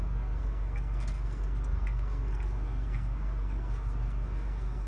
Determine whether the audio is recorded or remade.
remade